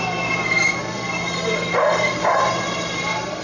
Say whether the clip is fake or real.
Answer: real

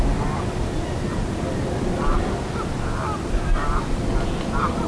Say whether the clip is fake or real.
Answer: real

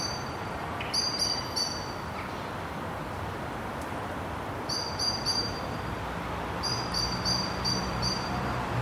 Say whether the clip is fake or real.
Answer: fake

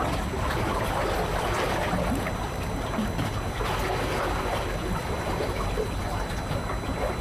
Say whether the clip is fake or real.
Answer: real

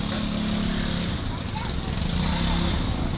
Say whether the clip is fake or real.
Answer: real